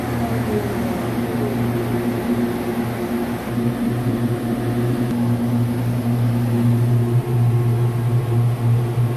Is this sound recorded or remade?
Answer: recorded